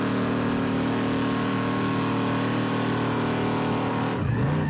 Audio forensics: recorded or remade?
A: recorded